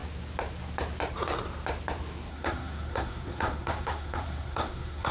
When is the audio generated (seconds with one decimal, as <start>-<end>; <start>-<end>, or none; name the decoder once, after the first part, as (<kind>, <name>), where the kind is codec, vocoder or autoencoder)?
2.3-5.1 (codec, SNAC)